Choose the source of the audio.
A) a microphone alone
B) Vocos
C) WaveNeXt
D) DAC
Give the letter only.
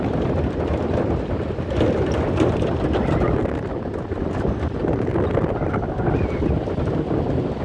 A